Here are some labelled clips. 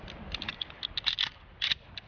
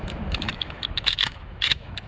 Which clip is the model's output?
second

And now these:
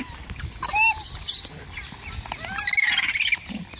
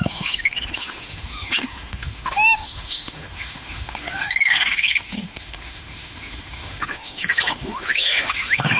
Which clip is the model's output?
second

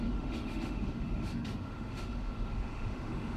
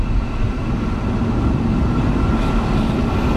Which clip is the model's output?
first